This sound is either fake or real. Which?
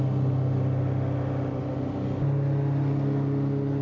real